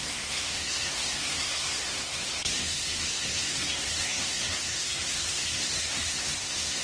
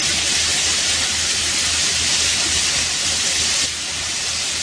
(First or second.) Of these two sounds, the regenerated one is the first